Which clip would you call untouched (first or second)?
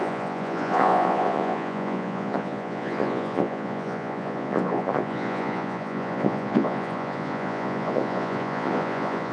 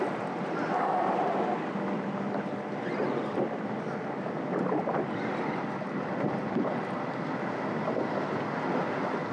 second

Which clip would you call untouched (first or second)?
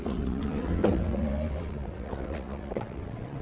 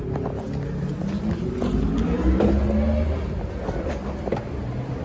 second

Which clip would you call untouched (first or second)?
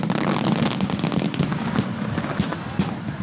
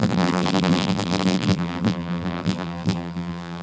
first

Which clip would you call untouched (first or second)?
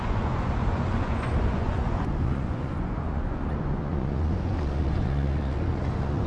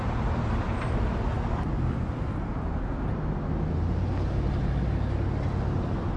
second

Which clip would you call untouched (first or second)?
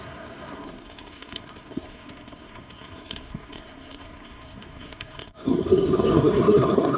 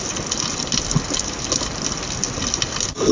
second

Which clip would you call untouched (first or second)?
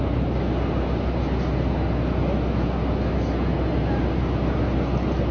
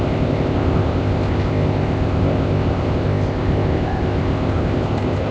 first